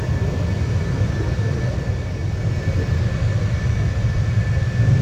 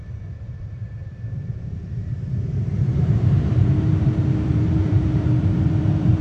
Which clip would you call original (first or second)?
first